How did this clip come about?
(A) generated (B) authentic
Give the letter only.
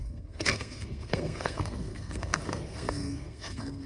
A